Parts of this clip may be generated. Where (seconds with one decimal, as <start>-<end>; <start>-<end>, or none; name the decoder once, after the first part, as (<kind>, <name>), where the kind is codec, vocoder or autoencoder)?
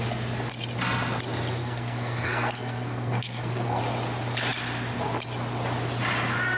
1.6-3.8 (codec, SNAC)